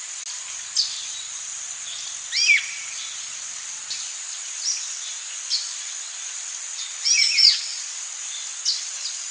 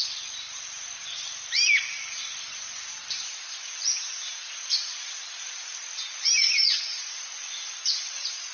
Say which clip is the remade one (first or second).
second